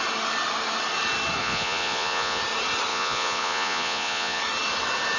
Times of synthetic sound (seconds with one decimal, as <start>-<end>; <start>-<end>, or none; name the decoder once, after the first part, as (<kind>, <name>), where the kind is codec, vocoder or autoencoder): 1.4-2.4 (vocoder, Vocos); 2.9-4.4